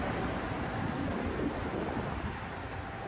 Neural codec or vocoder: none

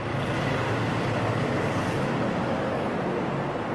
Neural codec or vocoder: none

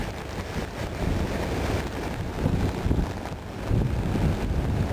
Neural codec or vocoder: none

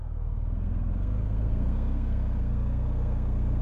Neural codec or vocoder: codec, SNAC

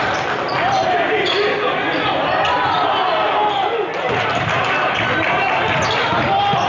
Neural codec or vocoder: none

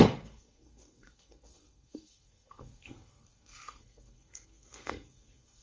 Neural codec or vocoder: codec, SNAC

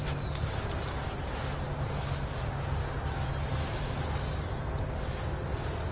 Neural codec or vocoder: none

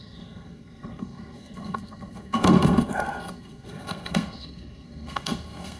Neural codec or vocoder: codec, SNAC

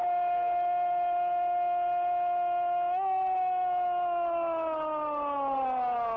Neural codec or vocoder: none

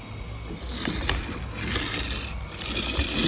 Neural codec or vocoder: none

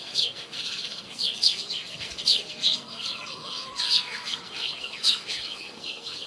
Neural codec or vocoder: codec, SNAC